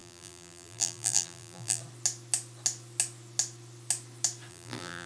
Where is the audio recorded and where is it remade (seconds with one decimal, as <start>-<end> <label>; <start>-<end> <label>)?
0.0-1.8 remade; 1.8-4.5 recorded; 4.5-5.1 remade